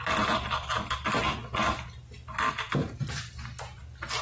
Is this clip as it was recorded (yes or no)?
yes